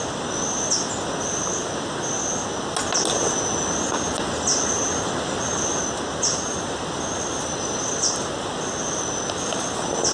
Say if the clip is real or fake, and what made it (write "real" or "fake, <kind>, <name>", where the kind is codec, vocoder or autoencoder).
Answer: real